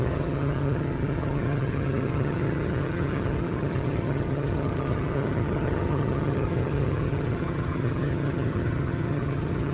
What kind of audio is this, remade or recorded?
remade